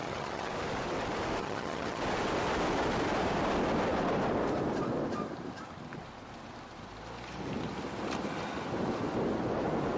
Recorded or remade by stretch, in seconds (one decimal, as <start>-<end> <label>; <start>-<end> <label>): 0.0-0.5 remade; 0.5-1.4 recorded; 1.4-2.0 remade; 2.0-10.0 recorded